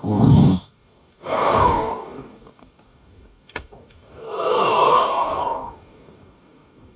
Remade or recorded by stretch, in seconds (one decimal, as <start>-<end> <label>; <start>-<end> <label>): 0.0-7.0 remade